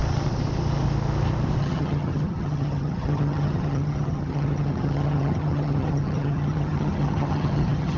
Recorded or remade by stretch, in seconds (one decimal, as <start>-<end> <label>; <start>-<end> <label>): 0.0-1.6 recorded; 1.6-8.0 remade